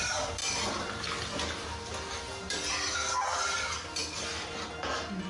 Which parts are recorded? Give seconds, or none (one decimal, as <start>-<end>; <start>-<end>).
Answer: 0.0-5.3